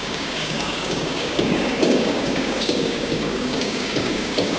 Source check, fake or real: fake